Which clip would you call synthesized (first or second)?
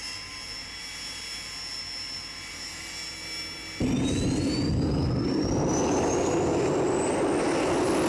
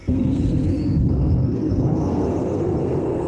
second